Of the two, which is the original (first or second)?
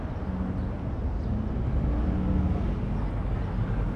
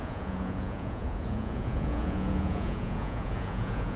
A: first